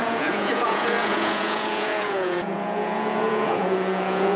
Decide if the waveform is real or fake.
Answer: fake